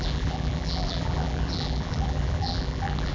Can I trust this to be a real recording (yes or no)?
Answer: no